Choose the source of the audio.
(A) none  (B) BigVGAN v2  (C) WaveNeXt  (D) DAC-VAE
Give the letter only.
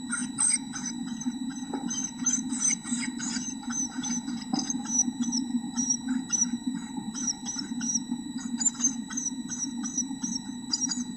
A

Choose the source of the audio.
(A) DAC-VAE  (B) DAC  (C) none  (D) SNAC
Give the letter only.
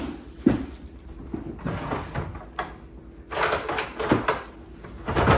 C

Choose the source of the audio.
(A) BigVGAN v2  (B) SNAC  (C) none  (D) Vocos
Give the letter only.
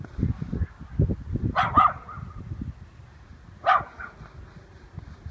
C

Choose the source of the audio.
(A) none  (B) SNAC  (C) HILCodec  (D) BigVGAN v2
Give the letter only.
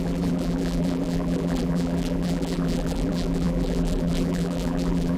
D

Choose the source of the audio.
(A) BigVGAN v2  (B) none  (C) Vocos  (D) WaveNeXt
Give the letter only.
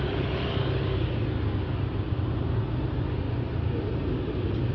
B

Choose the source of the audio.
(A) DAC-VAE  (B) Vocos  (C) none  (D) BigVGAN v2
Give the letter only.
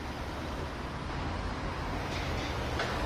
C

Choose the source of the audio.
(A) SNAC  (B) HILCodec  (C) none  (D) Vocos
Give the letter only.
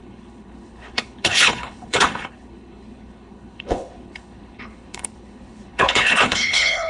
B